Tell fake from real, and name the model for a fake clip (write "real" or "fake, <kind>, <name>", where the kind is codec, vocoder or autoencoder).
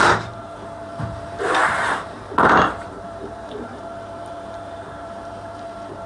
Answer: fake, vocoder, BigVGAN v2